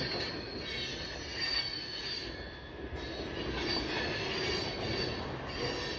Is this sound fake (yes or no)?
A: no